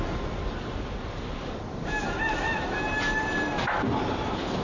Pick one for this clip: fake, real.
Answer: real